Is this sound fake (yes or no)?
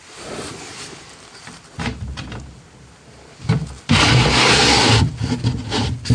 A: no